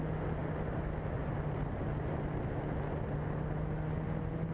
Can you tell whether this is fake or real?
real